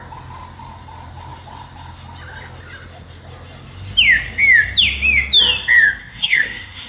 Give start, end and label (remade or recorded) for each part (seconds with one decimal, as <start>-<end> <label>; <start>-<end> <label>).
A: 0.0-6.0 recorded; 6.0-6.9 remade